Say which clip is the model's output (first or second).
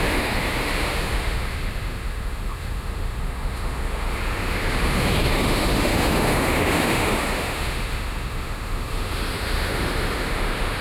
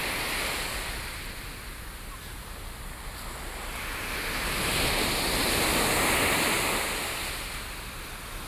first